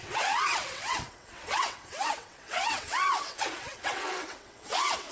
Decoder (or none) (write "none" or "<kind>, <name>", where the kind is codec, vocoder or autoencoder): vocoder, WaveNeXt